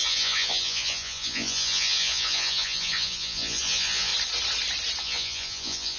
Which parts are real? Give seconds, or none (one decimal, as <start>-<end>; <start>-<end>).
4.1-5.0